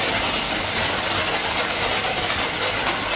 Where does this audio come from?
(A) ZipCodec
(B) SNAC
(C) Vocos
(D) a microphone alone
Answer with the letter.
D